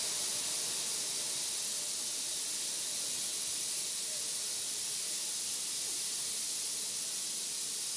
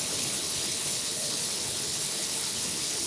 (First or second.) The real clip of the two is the first